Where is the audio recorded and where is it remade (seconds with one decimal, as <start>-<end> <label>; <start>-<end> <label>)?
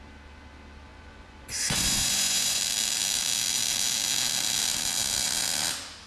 0.0-0.9 recorded; 0.9-2.6 remade; 2.6-6.1 recorded